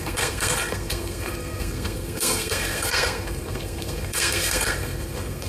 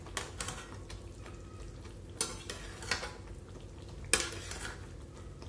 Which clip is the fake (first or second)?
first